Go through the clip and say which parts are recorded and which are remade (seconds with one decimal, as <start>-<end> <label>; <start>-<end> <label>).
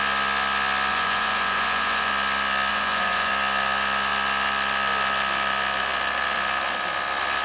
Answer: 0.0-0.9 recorded; 0.9-2.1 remade; 2.1-2.7 recorded; 2.7-3.3 remade; 3.3-7.4 recorded